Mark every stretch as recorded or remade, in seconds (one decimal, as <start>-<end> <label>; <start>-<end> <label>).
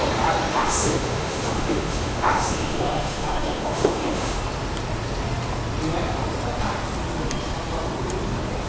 0.0-0.5 recorded; 0.5-4.4 remade; 4.4-8.7 recorded